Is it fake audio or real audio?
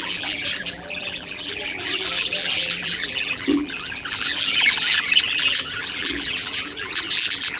fake